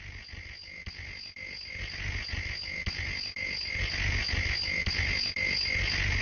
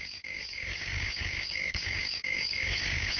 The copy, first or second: second